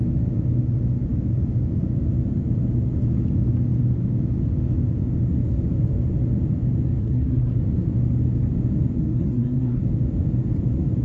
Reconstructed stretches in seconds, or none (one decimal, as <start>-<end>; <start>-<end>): 7.0-7.6; 9.0-9.8